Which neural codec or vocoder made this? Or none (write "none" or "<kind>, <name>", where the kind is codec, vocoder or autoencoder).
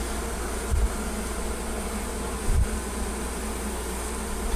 none